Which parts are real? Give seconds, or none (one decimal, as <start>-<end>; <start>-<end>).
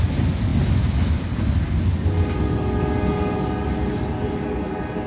0.0-5.1